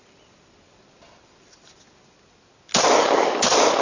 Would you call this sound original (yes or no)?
yes